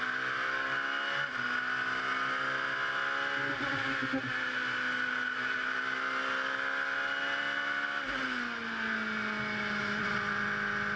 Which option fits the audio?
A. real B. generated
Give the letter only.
A